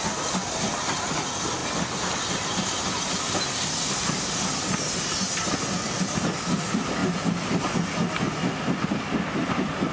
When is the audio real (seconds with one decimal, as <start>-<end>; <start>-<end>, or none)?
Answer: 0.0-9.9